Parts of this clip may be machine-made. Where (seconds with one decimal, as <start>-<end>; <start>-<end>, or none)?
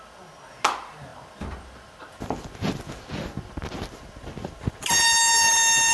none